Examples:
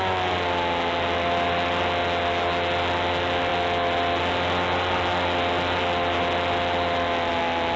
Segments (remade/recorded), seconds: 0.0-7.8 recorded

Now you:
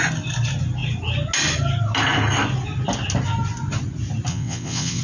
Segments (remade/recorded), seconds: 0.0-4.3 recorded; 4.3-5.0 remade